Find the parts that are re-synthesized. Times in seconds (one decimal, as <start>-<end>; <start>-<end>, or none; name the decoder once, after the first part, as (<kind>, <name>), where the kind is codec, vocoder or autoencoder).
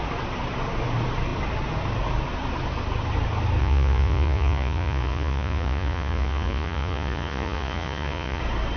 3.6-8.4 (vocoder, Vocos)